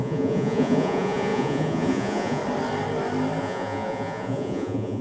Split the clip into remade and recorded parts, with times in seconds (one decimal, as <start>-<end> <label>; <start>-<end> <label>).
0.0-2.4 remade; 2.4-3.4 recorded; 3.4-5.0 remade